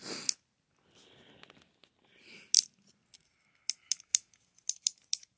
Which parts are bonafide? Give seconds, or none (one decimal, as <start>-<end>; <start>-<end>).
0.0-5.4